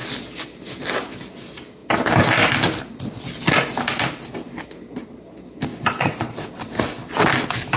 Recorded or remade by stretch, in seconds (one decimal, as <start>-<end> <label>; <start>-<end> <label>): 0.0-5.7 recorded; 5.7-6.6 remade; 6.6-7.8 recorded